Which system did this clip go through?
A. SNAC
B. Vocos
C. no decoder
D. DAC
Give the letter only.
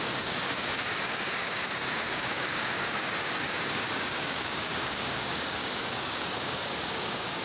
D